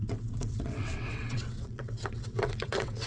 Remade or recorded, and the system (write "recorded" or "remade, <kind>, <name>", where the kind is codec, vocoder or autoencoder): remade, vocoder, WaveNeXt